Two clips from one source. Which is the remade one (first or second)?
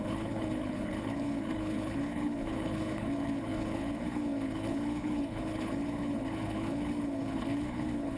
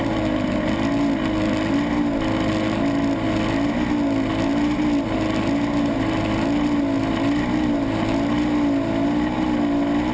first